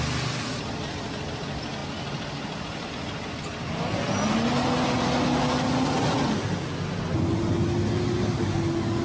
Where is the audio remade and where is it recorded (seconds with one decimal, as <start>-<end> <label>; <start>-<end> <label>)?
0.0-9.0 recorded